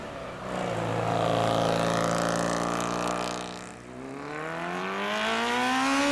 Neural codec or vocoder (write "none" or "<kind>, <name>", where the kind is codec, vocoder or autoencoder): none